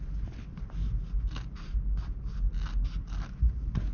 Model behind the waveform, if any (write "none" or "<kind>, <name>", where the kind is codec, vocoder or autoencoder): none